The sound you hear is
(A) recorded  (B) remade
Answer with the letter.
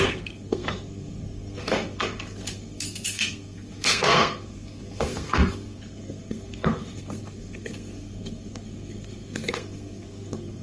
B